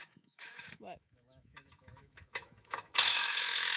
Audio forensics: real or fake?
fake